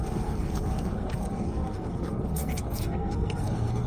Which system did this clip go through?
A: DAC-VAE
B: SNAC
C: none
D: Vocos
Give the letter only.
B